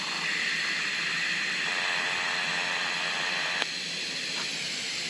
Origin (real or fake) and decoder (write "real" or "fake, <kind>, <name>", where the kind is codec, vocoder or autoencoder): real